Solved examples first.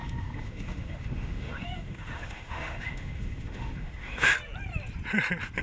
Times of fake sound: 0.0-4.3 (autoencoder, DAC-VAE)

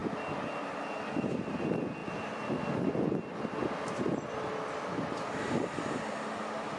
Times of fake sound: 0.0-1.6 (vocoder, BigVGAN v2)

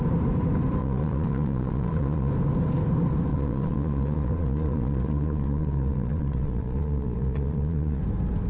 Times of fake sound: 0.8-2.3 (vocoder, Vocos); 3.3-8.0

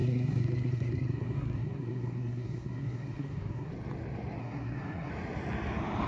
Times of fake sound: 0.0-3.7 (codec, SNAC); 4.4-5.1

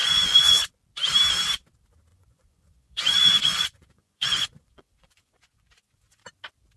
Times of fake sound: 0.0-0.7 (vocoder, Vocos); 2.1-6.2

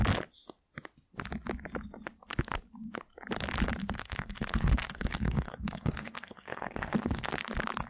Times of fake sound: 3.8-7.3 (codec, SNAC)